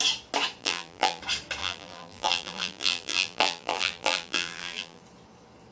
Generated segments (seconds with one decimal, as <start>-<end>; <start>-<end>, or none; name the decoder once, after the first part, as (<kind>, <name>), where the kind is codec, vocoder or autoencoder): 0.6-1.2 (vocoder, BigVGAN v2); 1.6-5.0